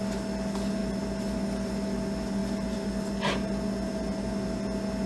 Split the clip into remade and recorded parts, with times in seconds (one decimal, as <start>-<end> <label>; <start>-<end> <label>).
0.0-5.1 recorded